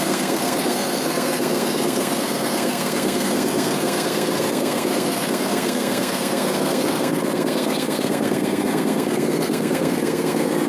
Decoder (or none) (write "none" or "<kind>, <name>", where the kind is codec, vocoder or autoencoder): codec, SNAC